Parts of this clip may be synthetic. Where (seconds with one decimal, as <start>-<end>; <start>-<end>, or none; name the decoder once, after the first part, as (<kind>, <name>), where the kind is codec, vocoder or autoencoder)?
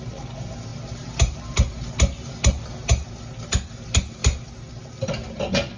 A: none